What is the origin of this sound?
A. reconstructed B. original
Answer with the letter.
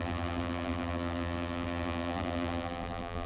A